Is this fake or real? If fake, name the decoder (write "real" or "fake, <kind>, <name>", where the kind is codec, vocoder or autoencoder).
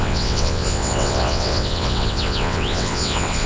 fake, vocoder, WaveNeXt